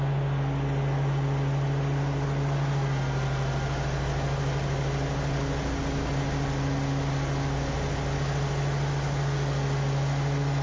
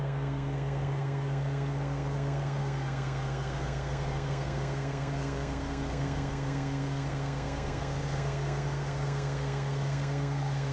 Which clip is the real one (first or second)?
first